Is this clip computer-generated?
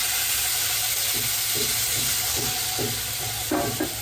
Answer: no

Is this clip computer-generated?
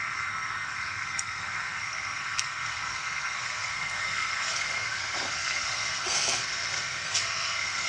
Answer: yes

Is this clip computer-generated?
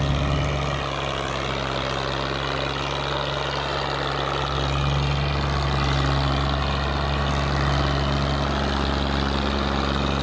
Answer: no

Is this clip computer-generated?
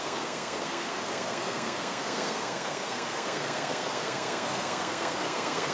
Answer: yes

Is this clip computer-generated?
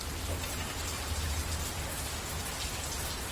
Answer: no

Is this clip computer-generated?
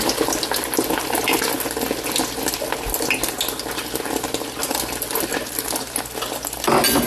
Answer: no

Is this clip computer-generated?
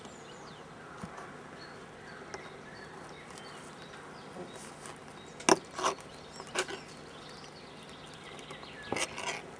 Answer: no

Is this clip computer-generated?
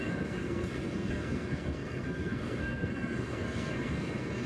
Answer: yes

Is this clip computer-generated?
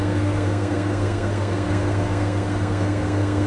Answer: yes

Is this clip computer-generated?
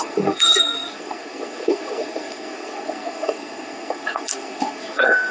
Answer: yes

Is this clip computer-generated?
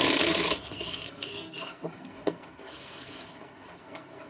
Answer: yes